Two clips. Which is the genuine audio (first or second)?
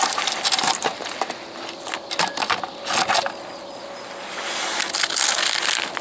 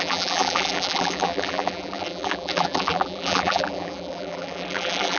first